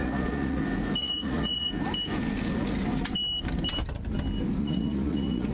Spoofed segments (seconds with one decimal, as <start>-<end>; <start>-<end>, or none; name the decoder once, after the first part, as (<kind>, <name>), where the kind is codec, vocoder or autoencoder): 0.0-0.6 (vocoder, Vocos); 1.0-1.7; 4.6-5.5